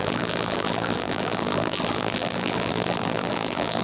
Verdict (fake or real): fake